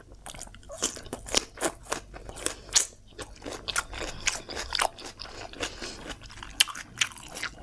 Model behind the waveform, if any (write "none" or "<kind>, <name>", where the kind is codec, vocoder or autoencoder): none